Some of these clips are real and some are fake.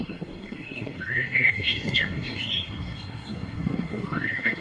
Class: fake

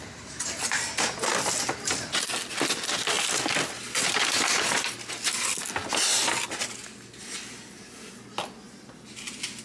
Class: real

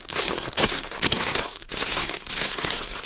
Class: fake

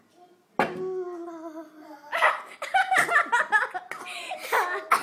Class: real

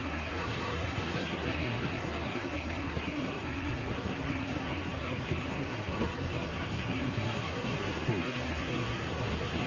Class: fake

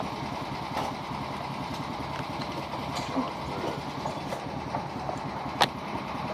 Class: real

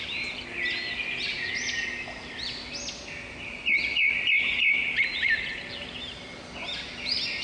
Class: real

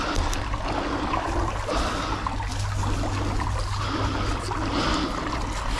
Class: real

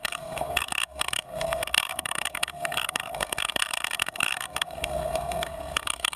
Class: fake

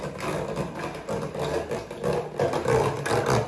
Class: real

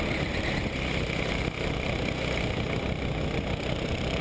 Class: real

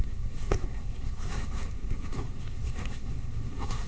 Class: fake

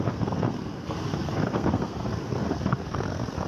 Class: fake